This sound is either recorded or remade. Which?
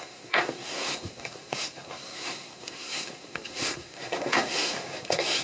remade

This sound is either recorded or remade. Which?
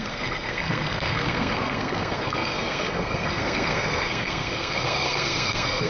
remade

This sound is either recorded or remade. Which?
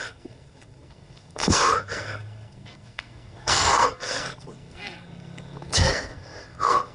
remade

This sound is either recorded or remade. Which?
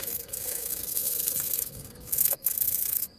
remade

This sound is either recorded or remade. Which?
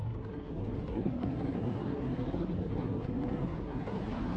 remade